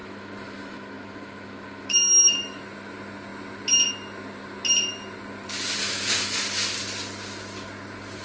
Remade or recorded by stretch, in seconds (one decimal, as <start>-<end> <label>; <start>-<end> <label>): 0.0-2.6 remade; 2.6-5.8 recorded; 5.8-6.4 remade; 6.4-8.2 recorded

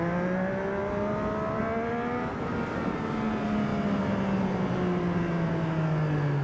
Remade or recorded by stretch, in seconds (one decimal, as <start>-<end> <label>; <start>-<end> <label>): 0.0-6.4 recorded